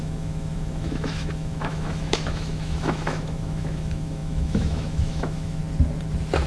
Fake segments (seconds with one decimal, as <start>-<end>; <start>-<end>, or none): 0.0-5.6